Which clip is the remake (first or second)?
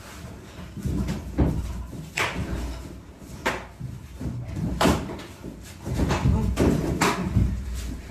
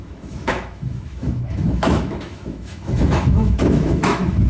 second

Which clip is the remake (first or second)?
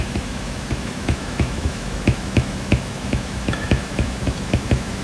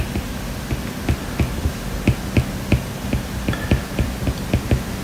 first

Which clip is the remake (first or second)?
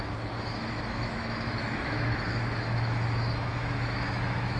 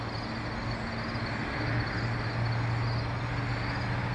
first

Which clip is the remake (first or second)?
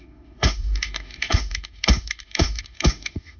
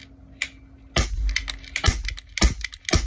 first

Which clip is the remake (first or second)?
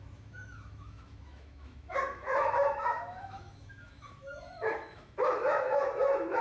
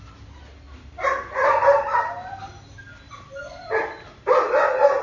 first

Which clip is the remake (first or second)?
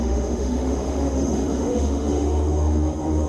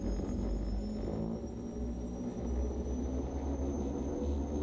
first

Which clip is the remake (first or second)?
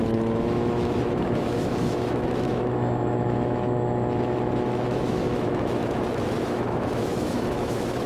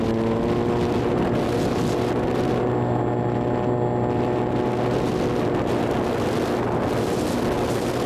first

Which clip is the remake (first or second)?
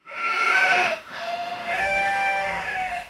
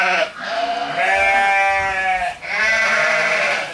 first